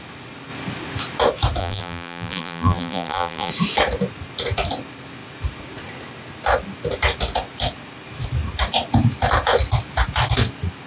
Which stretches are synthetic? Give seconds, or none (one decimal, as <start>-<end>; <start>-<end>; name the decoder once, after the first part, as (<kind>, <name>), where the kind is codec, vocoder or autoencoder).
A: 1.6-3.5 (vocoder, BigVGAN v2)